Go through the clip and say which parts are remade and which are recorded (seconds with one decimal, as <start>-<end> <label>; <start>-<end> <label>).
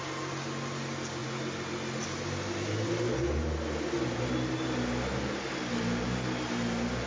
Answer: 0.0-7.1 recorded